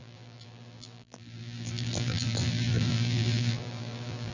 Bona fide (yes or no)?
no